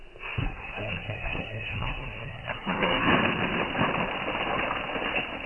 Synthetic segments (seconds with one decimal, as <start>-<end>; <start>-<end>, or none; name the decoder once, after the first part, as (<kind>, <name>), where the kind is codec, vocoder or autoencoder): 0.4-3.1 (codec, SNAC)